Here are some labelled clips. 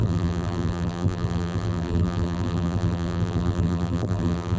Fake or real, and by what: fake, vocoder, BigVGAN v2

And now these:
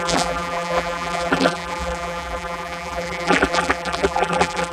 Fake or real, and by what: fake, vocoder, BigVGAN v2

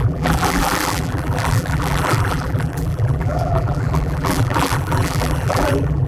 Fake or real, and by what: fake, vocoder, BigVGAN v2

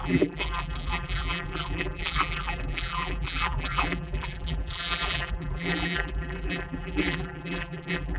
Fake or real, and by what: fake, vocoder, BigVGAN v2